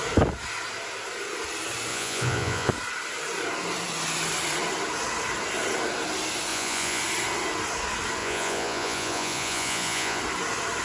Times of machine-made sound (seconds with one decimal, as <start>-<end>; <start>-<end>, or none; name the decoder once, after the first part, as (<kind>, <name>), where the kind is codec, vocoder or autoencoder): 1.9-2.7 (vocoder, Vocos); 6.5-7.0; 8.2-10.2